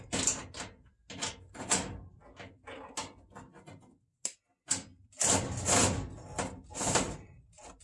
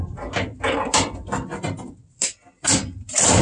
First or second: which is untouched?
first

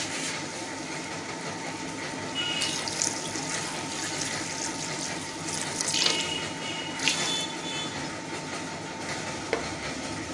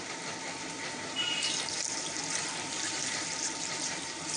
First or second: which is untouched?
first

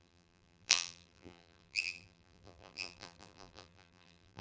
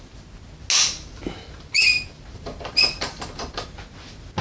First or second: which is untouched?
second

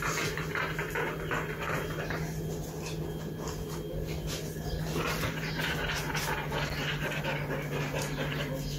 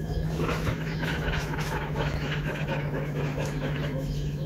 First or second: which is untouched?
first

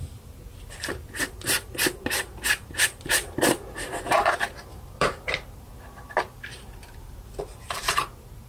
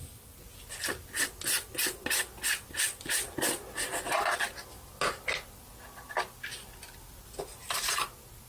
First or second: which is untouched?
second